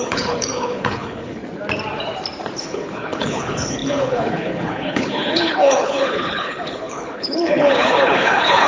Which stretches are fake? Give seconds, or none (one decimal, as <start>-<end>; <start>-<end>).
0.0-1.4; 2.6-8.7